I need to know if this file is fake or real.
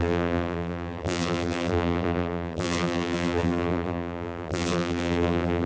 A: fake